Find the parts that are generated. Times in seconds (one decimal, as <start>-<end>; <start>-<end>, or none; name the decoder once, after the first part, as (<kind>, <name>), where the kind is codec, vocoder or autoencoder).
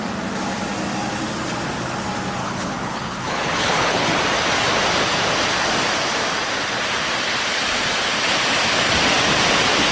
2.4-4.2 (codec, HILCodec)